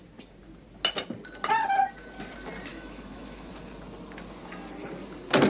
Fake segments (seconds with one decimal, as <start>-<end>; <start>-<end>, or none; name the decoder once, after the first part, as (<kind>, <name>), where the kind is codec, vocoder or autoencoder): 2.7-3.5 (autoencoder, DAC-VAE)